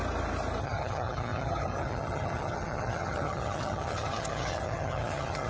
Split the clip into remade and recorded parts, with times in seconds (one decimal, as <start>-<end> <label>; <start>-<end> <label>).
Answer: 0.0-0.6 recorded; 0.6-5.5 remade